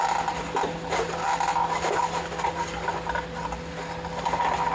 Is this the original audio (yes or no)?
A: yes